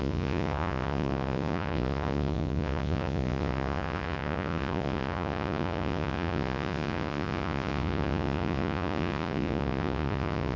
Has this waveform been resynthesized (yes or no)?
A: yes